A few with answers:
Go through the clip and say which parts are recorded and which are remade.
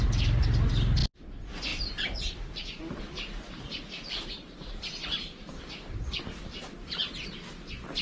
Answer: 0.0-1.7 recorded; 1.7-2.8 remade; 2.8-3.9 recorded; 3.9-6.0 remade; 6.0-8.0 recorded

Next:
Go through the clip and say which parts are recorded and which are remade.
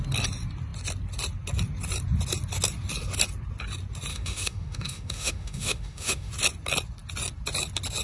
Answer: 0.0-4.1 recorded; 4.1-6.3 remade; 6.3-8.0 recorded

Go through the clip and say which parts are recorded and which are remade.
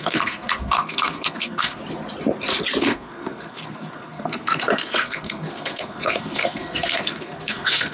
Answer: 0.0-1.8 remade; 1.8-2.8 recorded; 2.8-7.9 remade